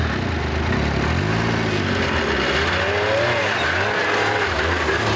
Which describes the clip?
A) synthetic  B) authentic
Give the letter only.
B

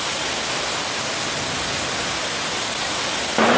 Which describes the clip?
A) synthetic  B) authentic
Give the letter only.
B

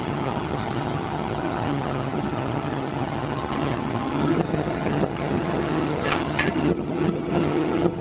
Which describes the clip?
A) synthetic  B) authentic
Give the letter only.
A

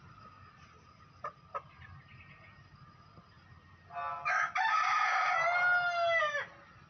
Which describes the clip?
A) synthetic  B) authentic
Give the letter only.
B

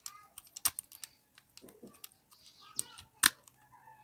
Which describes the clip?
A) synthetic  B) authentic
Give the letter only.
B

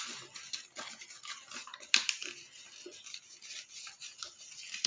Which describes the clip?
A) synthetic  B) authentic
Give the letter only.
B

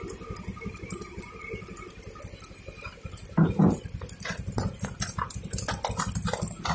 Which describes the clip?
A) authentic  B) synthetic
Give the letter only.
A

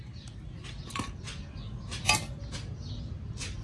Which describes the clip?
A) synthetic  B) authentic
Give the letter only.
B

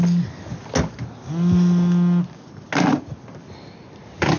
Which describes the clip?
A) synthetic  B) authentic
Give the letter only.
B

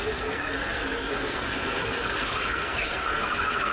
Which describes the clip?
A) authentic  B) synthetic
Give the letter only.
B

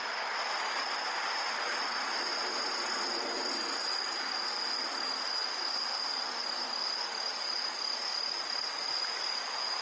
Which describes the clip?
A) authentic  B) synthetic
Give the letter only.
A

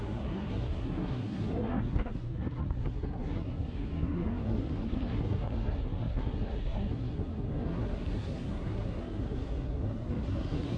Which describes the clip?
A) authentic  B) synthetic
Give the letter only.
B